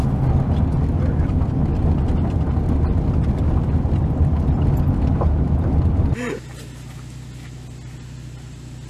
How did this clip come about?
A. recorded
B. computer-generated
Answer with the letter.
A